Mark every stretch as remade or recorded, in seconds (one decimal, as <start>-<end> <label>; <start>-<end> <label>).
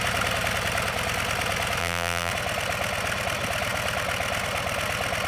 0.0-1.8 recorded; 1.8-2.3 remade; 2.3-5.3 recorded